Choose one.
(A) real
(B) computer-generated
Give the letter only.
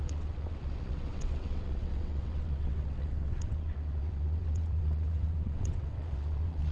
B